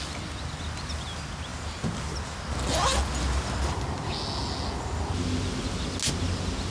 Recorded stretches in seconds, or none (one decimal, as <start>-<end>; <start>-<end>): 0.0-6.7